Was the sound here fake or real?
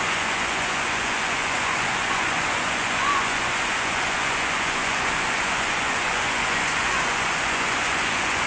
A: fake